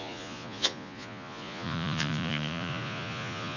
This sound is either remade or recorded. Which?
remade